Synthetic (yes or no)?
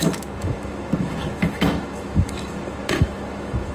yes